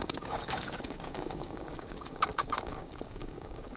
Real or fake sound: fake